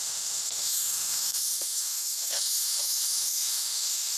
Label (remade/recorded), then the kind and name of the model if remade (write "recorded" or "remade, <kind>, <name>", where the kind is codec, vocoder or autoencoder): remade, autoencoder, DAC-VAE